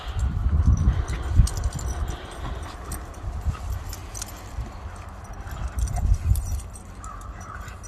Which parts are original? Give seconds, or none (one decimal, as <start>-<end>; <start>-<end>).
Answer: 0.0-7.9